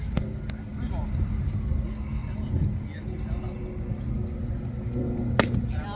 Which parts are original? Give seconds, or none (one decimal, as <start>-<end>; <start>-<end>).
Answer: 0.0-0.7; 1.7-6.0